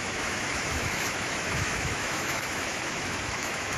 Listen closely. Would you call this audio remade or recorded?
remade